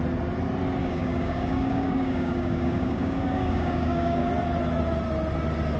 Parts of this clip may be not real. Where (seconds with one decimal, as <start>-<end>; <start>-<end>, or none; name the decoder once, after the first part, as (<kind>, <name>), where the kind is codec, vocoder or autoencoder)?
0.8-4.3 (codec, DAC)

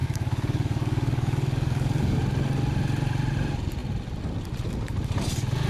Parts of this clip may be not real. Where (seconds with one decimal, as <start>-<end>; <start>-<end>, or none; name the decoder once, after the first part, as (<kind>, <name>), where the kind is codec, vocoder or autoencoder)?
0.0-2.2 (codec, DAC)